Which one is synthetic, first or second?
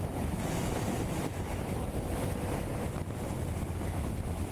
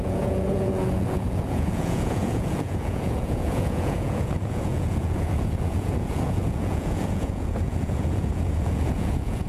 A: second